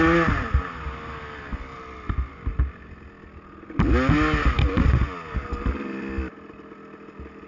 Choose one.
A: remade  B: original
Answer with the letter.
B